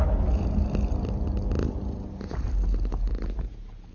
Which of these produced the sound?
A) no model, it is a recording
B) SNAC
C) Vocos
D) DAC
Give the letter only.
A